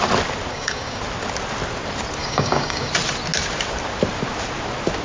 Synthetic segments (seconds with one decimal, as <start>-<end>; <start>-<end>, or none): 0.5-1.0; 2.2-2.9